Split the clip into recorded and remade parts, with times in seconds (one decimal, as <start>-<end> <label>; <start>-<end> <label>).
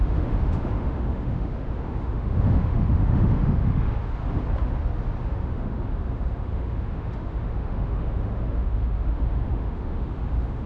0.0-4.2 remade; 4.2-5.2 recorded; 5.2-10.7 remade